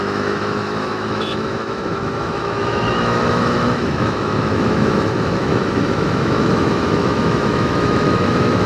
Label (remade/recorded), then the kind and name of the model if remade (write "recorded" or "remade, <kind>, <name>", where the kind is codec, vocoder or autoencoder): remade, autoencoder, DAC-VAE